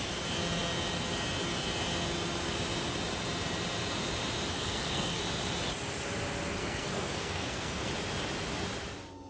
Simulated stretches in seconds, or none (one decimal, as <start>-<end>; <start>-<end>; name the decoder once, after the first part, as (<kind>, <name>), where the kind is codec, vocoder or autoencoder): 4.5-5.2 (codec, SNAC); 6.6-7.9